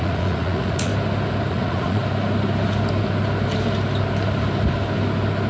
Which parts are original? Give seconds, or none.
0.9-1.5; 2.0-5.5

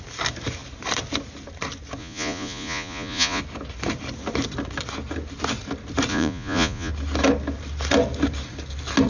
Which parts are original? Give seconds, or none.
0.0-2.0; 3.4-6.1; 6.9-9.1